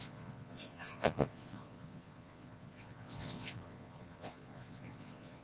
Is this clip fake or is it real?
fake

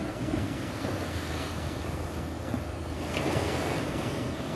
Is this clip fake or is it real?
fake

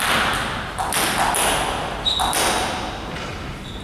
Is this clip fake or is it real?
real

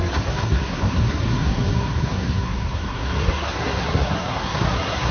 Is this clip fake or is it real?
fake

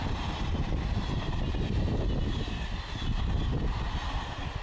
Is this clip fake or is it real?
real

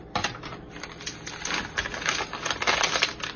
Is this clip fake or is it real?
real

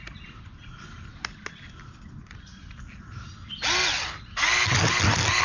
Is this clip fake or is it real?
real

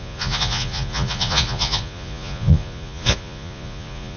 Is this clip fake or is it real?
fake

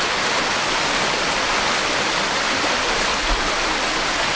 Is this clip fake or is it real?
real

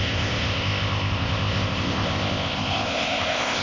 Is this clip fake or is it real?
fake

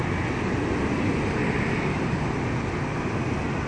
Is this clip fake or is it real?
real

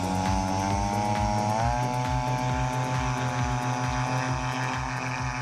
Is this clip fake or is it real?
real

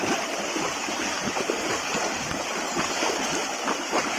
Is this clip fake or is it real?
real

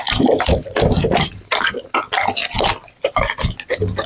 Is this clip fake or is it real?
real